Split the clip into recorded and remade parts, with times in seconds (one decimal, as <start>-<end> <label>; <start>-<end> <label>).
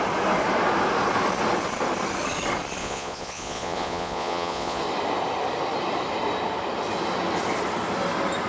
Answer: 0.0-2.8 recorded; 2.8-4.8 remade; 4.8-8.5 recorded